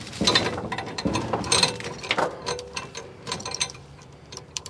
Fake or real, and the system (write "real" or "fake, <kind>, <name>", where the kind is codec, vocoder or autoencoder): fake, vocoder, BigVGAN v2